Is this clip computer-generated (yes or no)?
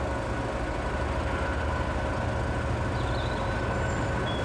no